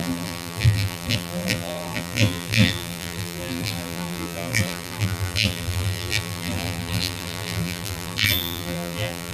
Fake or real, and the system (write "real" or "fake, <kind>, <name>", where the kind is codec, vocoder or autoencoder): fake, vocoder, BigVGAN v2